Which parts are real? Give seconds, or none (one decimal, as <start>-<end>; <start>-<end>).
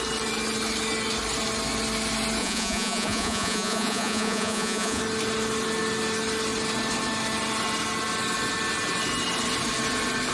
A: 0.0-2.4; 5.0-10.3